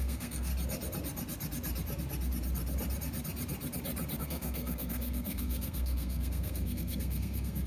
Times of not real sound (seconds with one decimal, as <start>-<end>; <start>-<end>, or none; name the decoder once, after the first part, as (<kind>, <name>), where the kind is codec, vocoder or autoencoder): 0.0-0.5 (codec, SNAC); 4.2-7.7